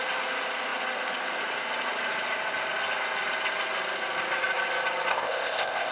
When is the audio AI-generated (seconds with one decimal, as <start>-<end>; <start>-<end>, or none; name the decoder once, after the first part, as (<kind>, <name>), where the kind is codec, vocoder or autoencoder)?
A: 5.1-5.9 (codec, ZipCodec)